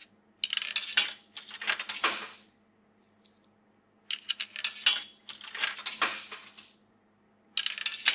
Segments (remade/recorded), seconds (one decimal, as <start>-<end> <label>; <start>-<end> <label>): 0.0-8.1 recorded